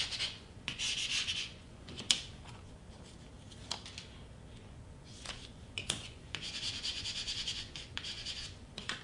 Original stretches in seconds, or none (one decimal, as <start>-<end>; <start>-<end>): 2.8-4.6